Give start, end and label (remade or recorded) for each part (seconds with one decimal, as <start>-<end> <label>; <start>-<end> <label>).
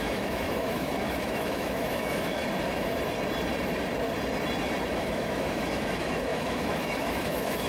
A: 0.0-2.4 remade; 2.4-4.9 recorded; 4.9-7.7 remade